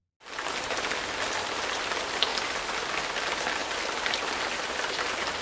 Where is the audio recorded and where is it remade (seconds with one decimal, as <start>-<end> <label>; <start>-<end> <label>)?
0.0-3.6 recorded; 3.6-4.8 remade; 4.8-5.4 recorded